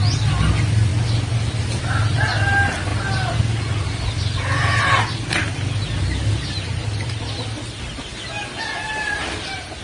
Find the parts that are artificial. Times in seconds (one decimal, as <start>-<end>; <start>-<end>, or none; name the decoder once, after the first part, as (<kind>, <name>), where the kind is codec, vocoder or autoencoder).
none